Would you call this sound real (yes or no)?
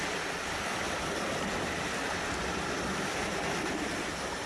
yes